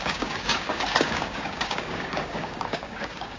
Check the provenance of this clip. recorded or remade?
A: remade